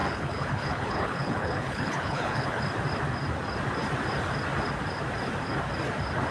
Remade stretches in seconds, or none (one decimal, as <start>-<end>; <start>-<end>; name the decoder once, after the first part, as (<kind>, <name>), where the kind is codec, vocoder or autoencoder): 0.0-2.6 (codec, HILCodec)